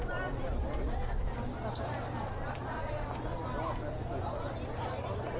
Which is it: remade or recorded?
recorded